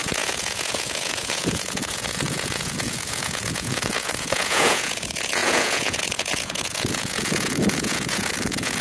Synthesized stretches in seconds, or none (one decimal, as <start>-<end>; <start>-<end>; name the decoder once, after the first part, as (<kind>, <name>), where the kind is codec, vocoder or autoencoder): 0.0-8.8 (vocoder, Vocos)